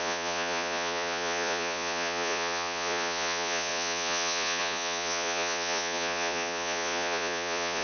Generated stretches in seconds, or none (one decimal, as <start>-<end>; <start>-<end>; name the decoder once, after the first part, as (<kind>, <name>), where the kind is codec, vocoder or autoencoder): 0.0-7.8 (vocoder, Vocos)